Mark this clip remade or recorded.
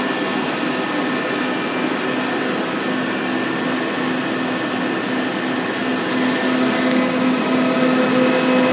recorded